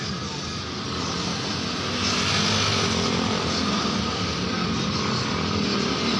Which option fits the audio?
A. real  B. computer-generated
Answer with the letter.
A